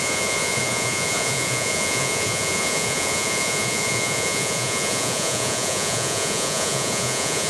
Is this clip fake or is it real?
fake